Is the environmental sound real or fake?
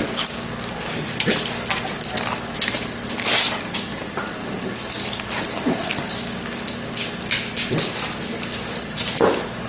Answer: real